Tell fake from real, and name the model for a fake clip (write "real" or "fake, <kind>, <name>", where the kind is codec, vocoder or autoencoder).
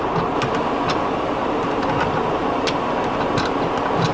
real